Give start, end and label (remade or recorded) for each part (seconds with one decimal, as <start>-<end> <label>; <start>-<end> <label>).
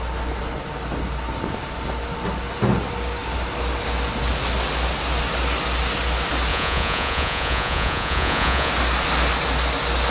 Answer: 0.0-6.5 recorded; 6.5-8.7 remade; 8.7-10.1 recorded